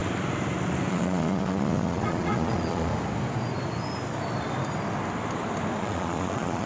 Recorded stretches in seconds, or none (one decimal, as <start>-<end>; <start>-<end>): 0.0-0.9; 2.9-5.8